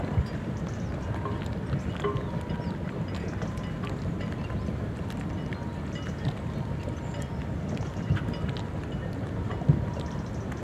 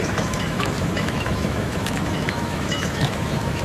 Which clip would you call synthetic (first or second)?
second